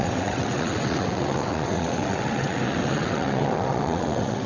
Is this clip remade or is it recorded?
remade